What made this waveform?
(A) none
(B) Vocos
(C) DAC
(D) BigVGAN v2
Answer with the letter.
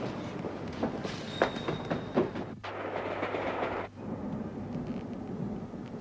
A